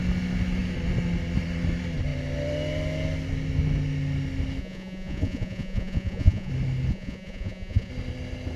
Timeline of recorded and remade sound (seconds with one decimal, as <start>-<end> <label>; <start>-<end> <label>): 0.0-4.6 recorded; 4.6-6.5 remade; 6.5-6.9 recorded; 6.9-7.9 remade; 7.9-8.6 recorded

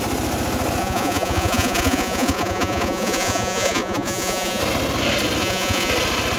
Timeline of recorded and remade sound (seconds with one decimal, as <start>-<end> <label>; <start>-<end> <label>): 0.0-0.8 recorded; 0.8-4.6 remade; 4.6-5.4 recorded; 5.4-5.9 remade; 5.9-6.4 recorded

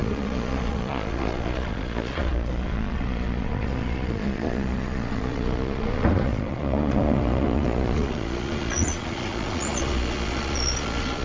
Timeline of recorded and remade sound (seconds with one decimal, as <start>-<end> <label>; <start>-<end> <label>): 0.0-11.2 remade